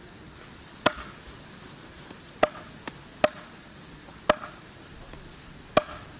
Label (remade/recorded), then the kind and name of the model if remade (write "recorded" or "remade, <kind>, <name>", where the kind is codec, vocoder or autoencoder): recorded